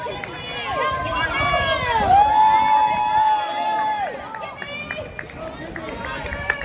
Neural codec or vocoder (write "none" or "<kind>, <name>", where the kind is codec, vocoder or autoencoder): none